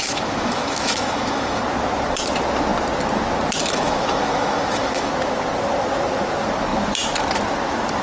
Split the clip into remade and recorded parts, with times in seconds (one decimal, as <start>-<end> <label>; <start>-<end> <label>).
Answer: 0.0-1.6 remade; 1.6-3.6 recorded; 3.6-5.1 remade; 5.1-8.0 recorded